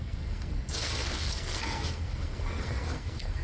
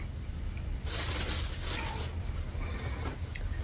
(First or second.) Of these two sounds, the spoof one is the first